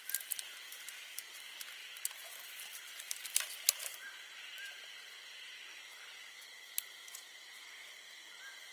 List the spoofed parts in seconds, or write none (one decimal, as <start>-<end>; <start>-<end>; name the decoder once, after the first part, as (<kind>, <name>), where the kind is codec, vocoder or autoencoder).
1.8-4.8 (vocoder, BigVGAN v2)